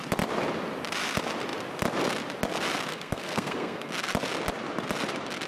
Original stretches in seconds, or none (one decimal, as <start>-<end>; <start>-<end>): 0.0-2.9; 3.9-5.5